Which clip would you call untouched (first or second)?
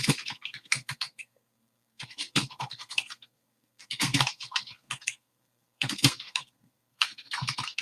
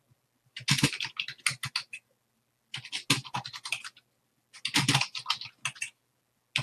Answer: second